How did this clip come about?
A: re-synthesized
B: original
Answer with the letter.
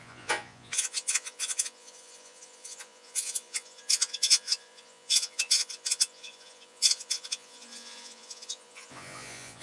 A